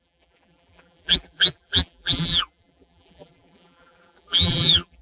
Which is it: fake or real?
fake